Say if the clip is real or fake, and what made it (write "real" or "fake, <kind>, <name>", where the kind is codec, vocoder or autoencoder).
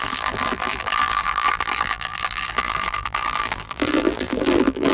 fake, vocoder, BigVGAN v2